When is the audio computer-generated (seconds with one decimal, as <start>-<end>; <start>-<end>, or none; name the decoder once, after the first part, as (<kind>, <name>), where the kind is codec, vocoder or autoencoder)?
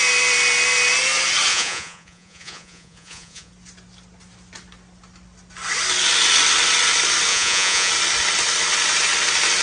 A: 1.5-3.5 (vocoder, Vocos); 7.3-7.9